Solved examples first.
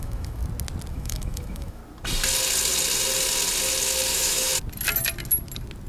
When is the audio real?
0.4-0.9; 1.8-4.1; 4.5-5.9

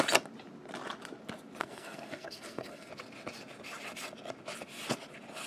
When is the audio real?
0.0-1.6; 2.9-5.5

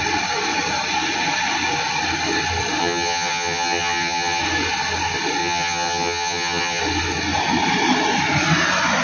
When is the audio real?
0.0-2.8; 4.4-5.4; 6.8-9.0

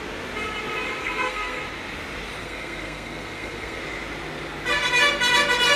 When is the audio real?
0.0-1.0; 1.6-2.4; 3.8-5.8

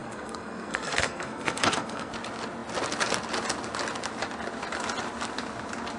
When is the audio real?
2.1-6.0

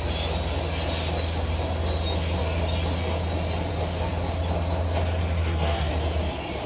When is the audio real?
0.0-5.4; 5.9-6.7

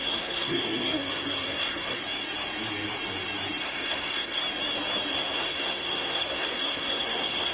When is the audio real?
2.0-3.6; 4.4-5.1